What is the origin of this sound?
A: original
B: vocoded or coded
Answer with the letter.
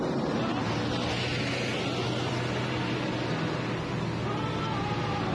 A